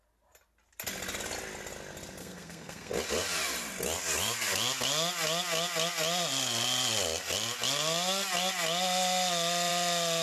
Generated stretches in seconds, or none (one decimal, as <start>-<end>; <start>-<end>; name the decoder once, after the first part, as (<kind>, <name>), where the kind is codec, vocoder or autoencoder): 2.2-2.9 (codec, SNAC)